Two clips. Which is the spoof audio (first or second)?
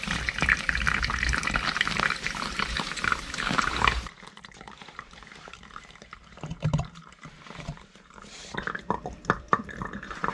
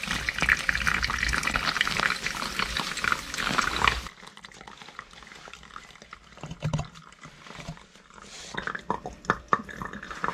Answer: first